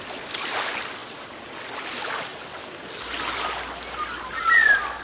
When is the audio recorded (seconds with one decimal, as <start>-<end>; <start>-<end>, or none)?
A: 0.0-5.0